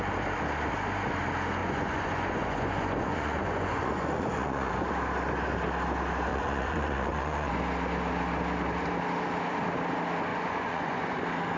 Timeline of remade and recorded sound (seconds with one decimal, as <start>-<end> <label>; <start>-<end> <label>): 0.0-1.6 recorded; 1.6-4.9 remade; 4.9-6.3 recorded; 6.3-7.5 remade; 7.5-10.3 recorded; 10.3-11.2 remade; 11.2-11.6 recorded

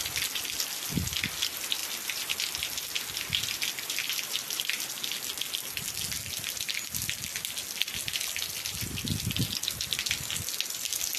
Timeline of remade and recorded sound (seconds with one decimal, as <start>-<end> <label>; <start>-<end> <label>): 0.0-11.2 recorded

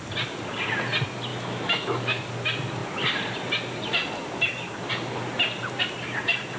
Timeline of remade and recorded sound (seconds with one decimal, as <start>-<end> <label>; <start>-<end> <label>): 0.0-1.3 recorded; 1.3-2.3 remade; 2.3-6.6 recorded

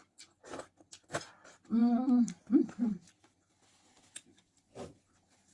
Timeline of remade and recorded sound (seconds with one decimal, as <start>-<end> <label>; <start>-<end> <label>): 0.0-5.5 recorded

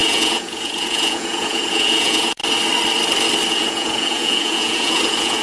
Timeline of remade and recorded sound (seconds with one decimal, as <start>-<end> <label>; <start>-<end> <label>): 0.0-2.4 remade; 2.4-3.5 recorded; 3.5-5.4 remade

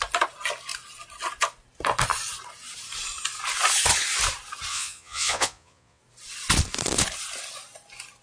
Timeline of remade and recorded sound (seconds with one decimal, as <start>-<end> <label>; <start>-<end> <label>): 0.0-4.7 recorded; 4.7-6.0 remade; 6.0-8.2 recorded

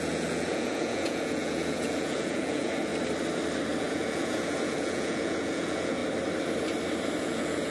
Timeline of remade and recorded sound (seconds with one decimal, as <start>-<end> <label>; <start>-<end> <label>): 0.0-2.9 remade; 2.9-3.8 recorded; 3.8-6.0 remade; 6.0-7.2 recorded; 7.2-7.7 remade